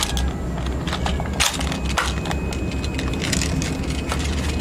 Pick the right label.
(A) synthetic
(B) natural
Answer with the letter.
B